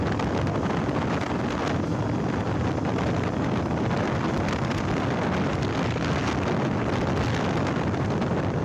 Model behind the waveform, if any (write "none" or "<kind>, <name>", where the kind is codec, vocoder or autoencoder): none